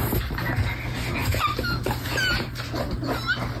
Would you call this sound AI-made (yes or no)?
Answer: no